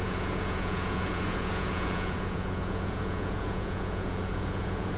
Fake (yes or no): yes